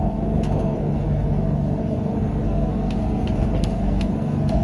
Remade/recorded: remade